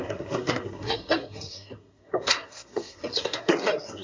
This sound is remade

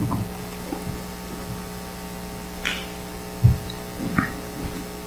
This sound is recorded